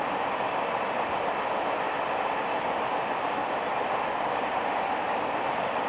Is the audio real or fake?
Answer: real